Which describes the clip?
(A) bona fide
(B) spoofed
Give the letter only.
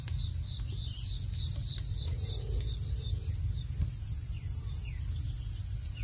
A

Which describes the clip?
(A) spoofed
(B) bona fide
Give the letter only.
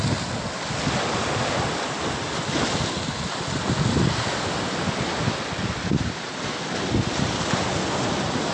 B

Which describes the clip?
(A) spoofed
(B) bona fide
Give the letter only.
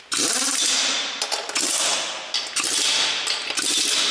B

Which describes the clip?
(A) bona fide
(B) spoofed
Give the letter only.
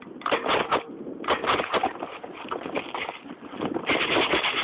A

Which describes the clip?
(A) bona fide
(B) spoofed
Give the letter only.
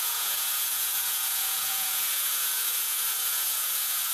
B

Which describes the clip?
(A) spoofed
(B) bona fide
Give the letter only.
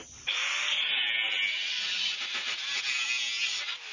B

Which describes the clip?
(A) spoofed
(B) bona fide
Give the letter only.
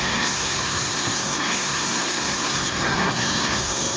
A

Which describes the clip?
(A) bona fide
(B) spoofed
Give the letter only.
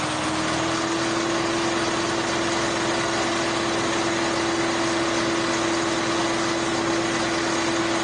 A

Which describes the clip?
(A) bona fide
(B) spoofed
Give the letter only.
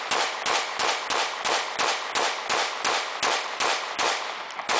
A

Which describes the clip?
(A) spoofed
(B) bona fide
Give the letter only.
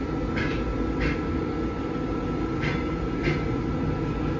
B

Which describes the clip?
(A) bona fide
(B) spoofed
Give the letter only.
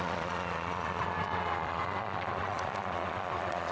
B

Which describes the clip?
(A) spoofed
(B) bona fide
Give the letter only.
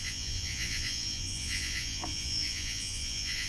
A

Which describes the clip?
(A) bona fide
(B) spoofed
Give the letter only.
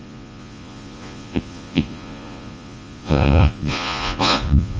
B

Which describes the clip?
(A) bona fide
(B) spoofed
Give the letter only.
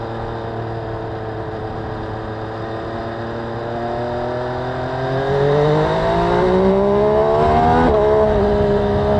A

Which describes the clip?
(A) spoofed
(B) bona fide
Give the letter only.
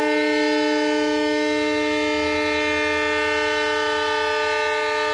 B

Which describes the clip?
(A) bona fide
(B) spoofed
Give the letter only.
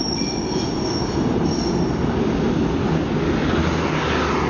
A